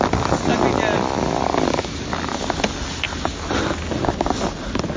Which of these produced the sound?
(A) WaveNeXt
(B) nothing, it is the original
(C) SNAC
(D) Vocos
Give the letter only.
B